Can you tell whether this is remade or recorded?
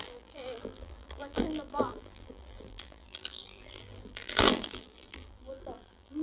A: remade